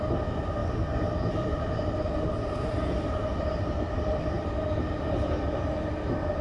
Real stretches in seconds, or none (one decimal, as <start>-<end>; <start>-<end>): 0.0-6.4